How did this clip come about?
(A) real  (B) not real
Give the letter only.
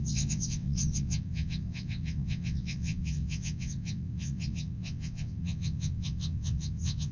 B